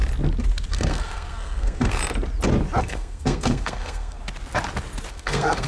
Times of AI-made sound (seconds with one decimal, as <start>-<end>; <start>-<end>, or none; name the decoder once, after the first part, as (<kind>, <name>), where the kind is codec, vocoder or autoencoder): 0.7-2.0 (codec, SNAC); 2.8-4.2; 5.1-5.7